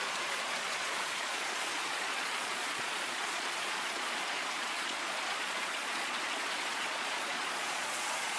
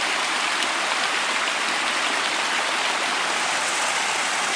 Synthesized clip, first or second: first